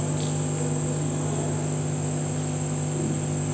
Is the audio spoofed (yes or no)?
no